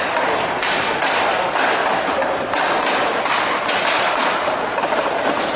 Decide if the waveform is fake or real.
real